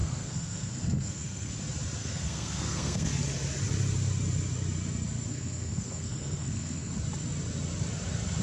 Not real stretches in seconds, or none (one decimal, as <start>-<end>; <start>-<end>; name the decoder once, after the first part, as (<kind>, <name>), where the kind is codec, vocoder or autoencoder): 0.0-1.5 (codec, SNAC); 2.0-3.1; 5.3-6.9